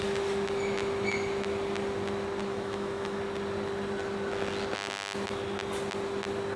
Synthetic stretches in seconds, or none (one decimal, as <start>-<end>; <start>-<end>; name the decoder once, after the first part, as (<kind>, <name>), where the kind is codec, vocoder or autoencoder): 2.5-3.2 (autoencoder, DAC-VAE)